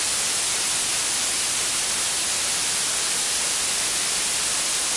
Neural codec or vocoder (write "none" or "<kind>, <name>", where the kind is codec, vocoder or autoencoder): none